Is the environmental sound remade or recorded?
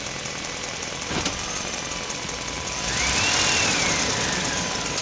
remade